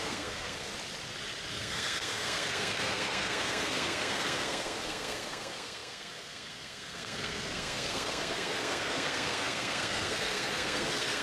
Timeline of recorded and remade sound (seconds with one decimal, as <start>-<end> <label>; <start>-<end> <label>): 0.0-0.7 remade; 0.7-1.5 recorded; 1.5-11.2 remade